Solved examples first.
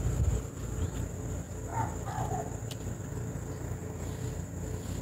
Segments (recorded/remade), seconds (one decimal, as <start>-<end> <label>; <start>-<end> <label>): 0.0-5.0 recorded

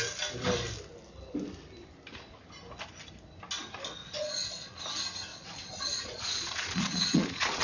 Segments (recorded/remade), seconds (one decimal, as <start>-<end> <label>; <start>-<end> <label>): 0.0-4.0 recorded; 4.0-4.8 remade; 4.8-5.3 recorded; 5.3-7.6 remade

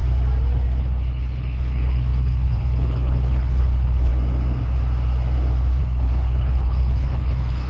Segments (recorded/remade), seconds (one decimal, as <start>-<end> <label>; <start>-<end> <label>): 0.0-0.8 recorded; 0.8-4.1 remade; 4.1-5.8 recorded; 5.8-7.7 remade